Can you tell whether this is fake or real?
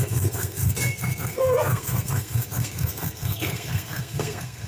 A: fake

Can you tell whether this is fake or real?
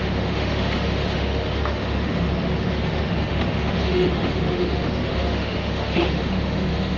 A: fake